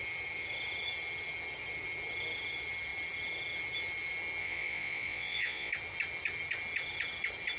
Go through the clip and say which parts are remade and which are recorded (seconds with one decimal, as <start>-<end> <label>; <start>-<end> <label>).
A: 0.0-4.4 recorded; 4.4-5.7 remade; 5.7-7.6 recorded